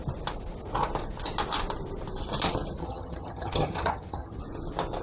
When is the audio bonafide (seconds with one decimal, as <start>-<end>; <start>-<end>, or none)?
0.0-2.8; 4.4-5.0

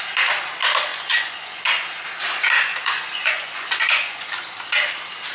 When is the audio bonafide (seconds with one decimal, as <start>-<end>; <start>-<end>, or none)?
0.0-0.9; 1.6-2.7; 4.3-5.3

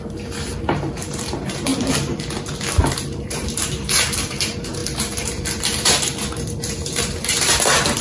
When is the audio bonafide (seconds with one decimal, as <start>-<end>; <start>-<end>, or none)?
1.7-2.8

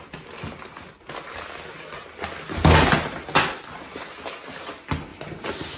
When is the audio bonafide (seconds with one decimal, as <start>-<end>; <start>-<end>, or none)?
0.0-5.8